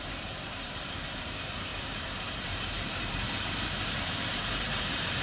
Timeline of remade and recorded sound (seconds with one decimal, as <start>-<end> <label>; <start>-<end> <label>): 0.0-5.2 remade